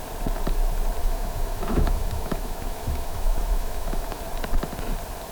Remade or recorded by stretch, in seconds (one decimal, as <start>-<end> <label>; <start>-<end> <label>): 0.0-1.0 recorded; 1.0-4.2 remade; 4.2-5.3 recorded